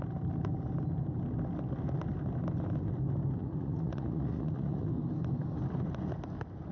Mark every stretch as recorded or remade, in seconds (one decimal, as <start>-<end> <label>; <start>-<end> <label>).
0.0-3.4 recorded; 3.4-4.9 remade; 4.9-6.7 recorded